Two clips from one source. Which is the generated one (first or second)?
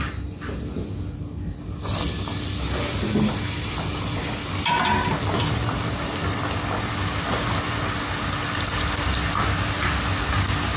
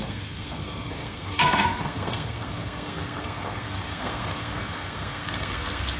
second